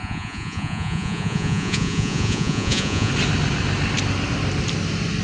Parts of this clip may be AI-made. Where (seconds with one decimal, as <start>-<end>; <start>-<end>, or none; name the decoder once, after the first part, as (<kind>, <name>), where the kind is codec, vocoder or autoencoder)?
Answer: 0.0-3.1 (vocoder, Vocos)